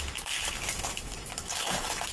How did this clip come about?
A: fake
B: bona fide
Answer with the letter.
A